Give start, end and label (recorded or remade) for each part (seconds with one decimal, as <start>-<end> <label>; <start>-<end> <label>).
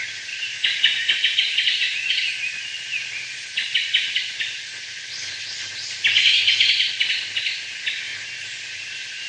0.0-9.3 recorded